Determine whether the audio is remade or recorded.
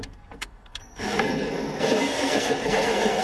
remade